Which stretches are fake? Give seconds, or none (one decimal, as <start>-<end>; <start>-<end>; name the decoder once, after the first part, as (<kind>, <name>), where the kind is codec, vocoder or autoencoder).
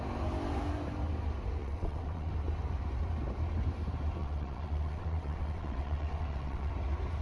1.6-2.3 (vocoder, WaveNeXt); 4.2-6.7